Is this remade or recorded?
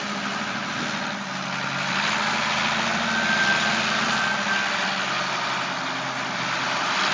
recorded